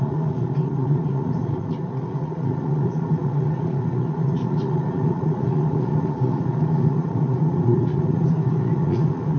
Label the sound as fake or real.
fake